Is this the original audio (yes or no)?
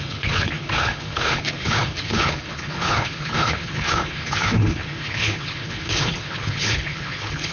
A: no